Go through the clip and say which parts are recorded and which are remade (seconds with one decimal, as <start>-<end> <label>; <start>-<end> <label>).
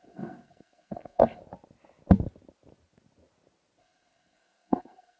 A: 0.0-1.4 remade; 1.4-3.8 recorded; 3.8-5.2 remade